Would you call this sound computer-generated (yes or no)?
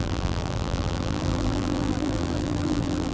yes